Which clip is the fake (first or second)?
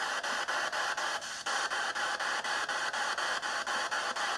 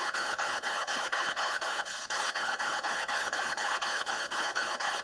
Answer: second